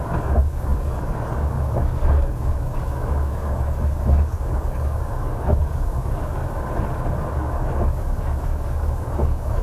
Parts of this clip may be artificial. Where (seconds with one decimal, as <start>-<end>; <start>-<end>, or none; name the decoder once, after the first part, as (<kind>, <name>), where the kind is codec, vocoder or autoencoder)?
0.0-6.4 (codec, DAC); 7.3-9.6